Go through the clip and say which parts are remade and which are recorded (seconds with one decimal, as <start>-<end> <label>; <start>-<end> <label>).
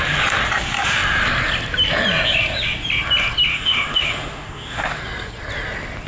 0.0-3.5 recorded; 3.5-5.0 remade; 5.0-6.1 recorded